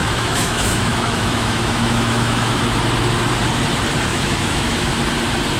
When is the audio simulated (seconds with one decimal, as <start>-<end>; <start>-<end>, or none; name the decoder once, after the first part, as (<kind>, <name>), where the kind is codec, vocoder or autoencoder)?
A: 0.0-2.6 (autoencoder, DAC-VAE); 4.1-4.9